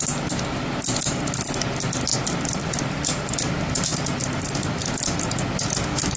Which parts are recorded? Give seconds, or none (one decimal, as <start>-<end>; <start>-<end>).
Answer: 0.0-2.1; 3.3-3.9; 5.5-6.2